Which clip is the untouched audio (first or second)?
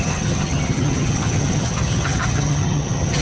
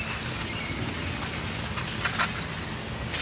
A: second